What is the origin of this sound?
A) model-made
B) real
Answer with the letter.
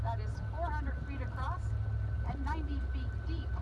B